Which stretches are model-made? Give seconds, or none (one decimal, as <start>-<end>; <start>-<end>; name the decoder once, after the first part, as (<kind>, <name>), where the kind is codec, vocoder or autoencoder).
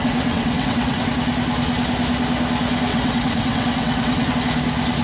0.0-1.1 (vocoder, WaveNeXt); 2.9-4.3